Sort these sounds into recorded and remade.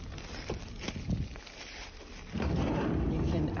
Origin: remade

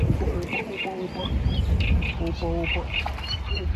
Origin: recorded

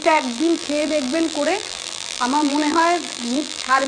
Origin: remade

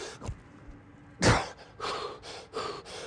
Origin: recorded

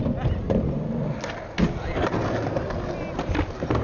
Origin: recorded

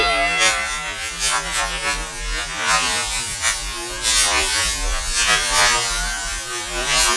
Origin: recorded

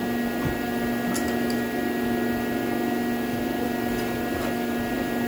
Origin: recorded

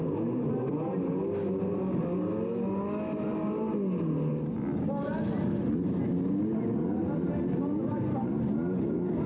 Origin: recorded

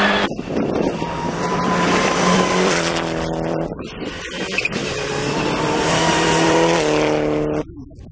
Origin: remade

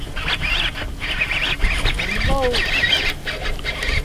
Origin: recorded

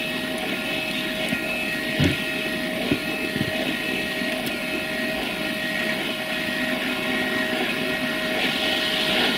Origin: recorded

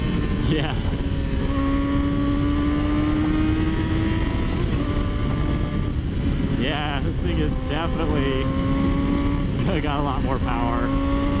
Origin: recorded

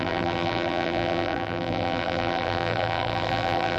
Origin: remade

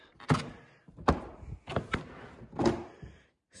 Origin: recorded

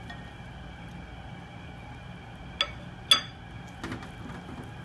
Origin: recorded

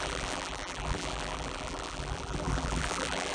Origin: remade